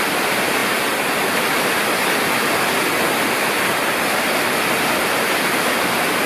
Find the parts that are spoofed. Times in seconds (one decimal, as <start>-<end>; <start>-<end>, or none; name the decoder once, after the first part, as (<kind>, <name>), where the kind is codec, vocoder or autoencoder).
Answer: none